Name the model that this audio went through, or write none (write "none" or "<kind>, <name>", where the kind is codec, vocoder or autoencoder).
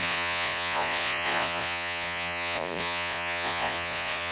vocoder, Vocos